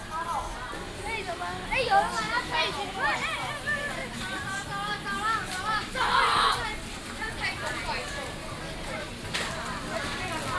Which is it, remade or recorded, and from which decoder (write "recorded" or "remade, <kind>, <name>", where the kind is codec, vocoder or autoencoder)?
recorded